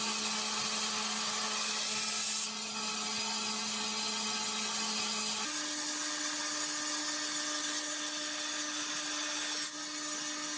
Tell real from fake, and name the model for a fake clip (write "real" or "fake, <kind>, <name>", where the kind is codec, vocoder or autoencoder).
real